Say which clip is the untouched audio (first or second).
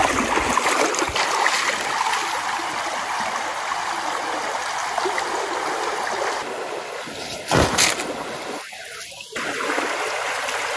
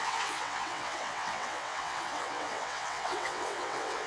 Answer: first